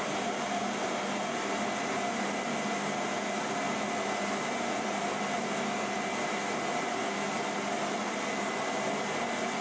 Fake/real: real